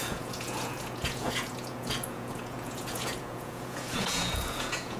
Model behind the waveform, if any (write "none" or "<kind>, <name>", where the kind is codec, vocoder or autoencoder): vocoder, Vocos